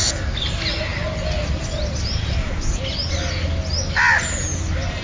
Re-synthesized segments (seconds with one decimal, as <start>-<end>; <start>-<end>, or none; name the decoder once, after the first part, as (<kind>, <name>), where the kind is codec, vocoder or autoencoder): 0.9-2.5 (vocoder, BigVGAN v2)